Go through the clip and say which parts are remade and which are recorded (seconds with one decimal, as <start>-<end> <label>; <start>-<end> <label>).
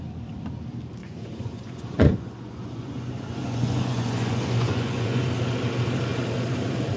0.0-1.0 recorded; 1.0-5.2 remade; 5.2-7.0 recorded